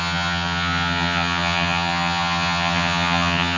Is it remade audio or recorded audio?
remade